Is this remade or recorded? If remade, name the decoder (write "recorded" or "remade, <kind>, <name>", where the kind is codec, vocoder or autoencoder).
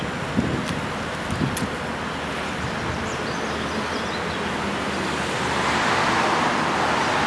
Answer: recorded